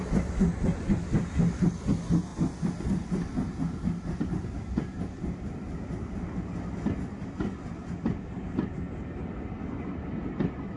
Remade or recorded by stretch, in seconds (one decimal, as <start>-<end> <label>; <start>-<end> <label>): 0.0-10.8 recorded